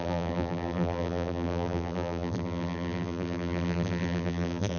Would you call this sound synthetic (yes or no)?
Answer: yes